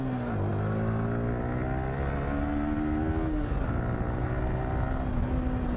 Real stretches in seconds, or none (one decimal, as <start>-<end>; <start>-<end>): 0.0-5.8